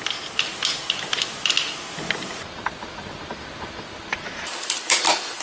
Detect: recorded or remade recorded